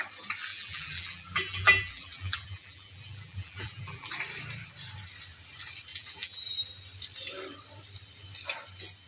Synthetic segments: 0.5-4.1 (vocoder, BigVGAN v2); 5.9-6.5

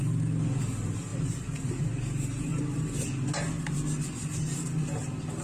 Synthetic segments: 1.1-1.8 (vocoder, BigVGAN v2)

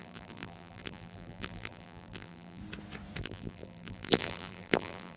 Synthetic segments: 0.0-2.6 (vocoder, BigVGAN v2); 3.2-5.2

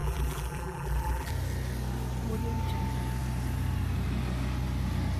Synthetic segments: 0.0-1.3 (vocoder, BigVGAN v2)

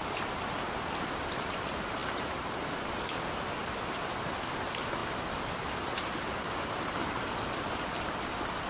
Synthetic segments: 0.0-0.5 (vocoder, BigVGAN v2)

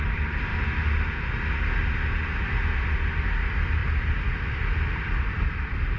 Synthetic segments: 0.0-0.5 (vocoder, BigVGAN v2); 3.0-3.8; 5.1-6.0

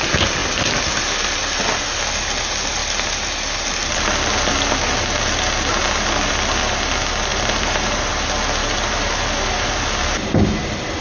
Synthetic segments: 7.3-8.1 (vocoder, BigVGAN v2); 8.6-9.8

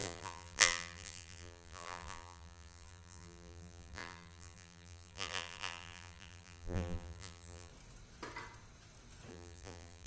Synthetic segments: 0.0-7.7 (vocoder, BigVGAN v2); 9.3-10.1